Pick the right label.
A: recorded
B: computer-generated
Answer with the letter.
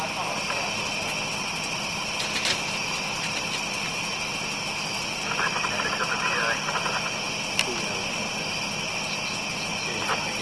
A